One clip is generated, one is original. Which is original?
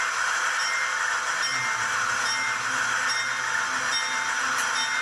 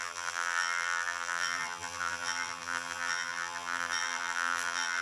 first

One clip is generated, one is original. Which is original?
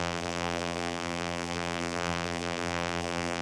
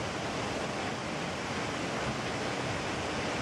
second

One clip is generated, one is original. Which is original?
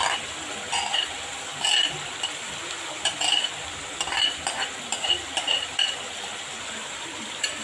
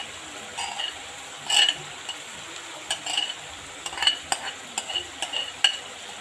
second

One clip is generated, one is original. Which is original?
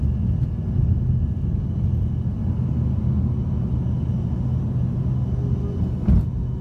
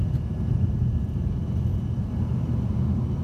first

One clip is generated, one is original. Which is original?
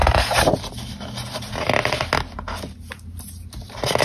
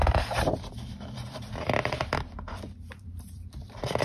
first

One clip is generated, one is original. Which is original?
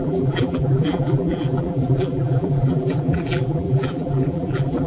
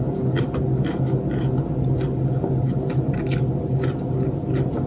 second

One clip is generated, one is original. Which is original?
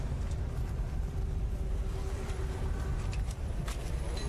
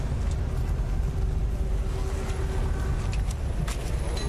second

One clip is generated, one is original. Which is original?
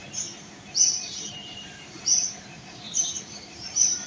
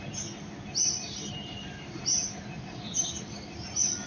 second